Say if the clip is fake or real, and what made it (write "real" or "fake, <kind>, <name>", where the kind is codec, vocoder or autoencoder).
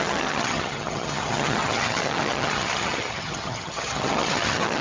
fake, vocoder, HiFi-GAN